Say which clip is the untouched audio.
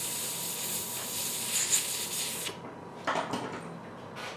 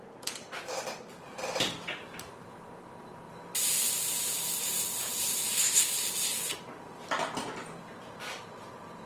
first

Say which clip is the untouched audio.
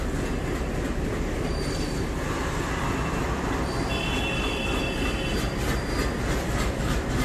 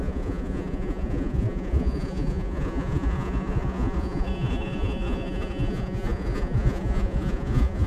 first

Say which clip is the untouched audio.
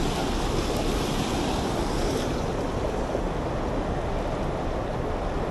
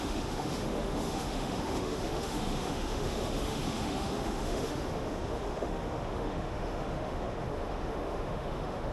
first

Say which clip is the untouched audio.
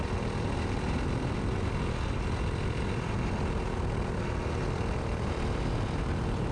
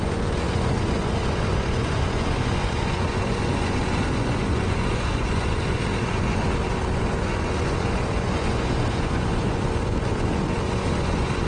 first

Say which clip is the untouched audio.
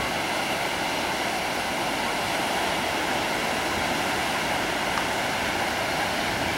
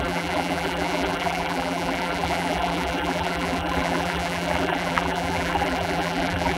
first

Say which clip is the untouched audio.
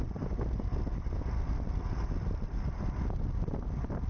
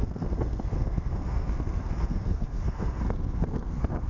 first